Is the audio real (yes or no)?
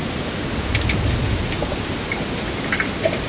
yes